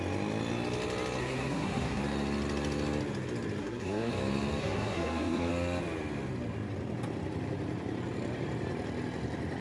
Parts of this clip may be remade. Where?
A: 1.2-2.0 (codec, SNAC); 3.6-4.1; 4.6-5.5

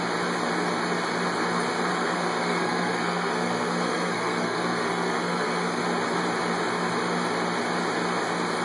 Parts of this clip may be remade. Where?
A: 1.9-5.8 (codec, SNAC)

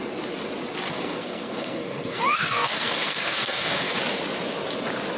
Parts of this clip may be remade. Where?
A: 0.9-4.0 (codec, SNAC)

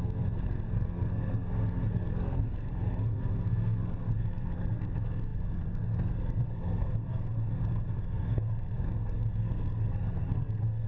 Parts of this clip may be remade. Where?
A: 0.0-10.9 (codec, SNAC)

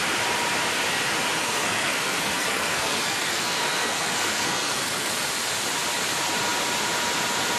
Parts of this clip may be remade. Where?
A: 1.4-5.1 (codec, SNAC)

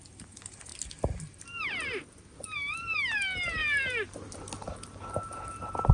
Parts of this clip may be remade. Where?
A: none

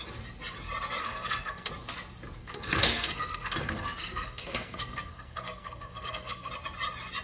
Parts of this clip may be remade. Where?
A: 1.0-1.7 (codec, SNAC); 2.4-6.5